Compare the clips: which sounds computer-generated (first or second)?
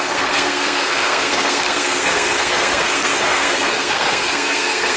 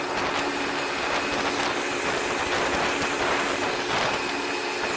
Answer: first